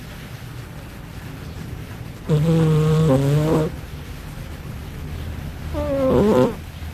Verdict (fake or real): fake